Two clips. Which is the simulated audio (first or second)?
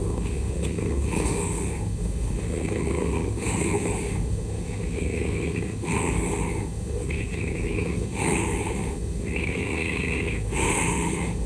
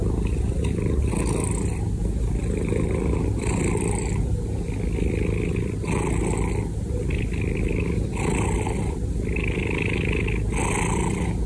first